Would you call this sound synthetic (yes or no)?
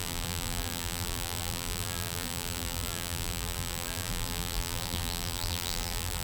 yes